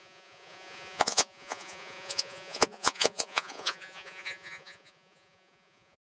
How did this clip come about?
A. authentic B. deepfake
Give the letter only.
B